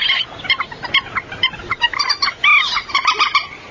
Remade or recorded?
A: recorded